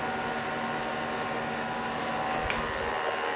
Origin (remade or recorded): recorded